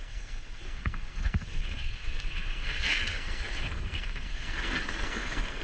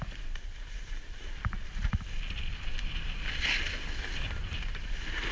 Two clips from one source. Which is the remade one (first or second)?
first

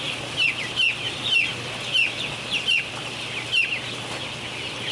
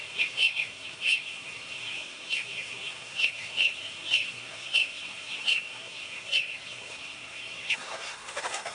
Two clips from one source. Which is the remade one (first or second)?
second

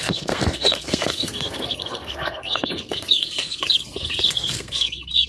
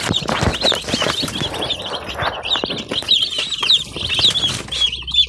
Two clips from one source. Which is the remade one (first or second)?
first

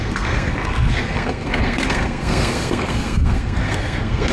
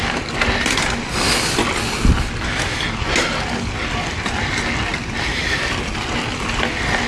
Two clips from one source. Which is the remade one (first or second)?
first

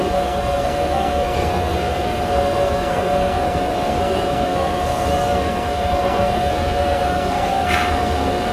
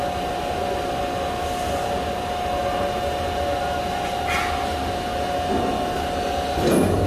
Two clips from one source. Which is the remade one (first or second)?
first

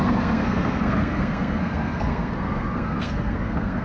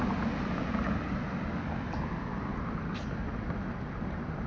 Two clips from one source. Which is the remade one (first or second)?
first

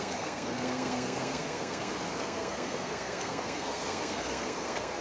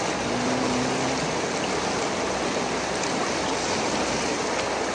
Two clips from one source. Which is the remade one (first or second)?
first